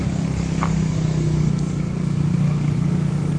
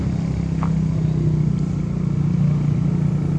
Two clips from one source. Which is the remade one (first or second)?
first